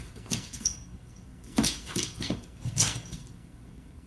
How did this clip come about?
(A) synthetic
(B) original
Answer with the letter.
A